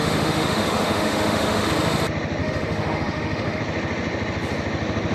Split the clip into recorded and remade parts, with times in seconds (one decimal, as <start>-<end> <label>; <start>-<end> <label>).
0.0-1.7 remade; 1.7-2.4 recorded; 2.4-3.6 remade; 3.6-5.1 recorded